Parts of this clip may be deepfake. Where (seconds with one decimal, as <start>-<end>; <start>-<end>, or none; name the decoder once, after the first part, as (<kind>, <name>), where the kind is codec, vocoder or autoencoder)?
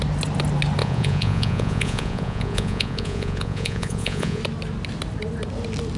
0.8-4.4 (vocoder, Vocos)